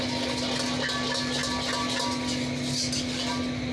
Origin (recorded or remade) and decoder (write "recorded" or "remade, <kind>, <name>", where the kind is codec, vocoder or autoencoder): recorded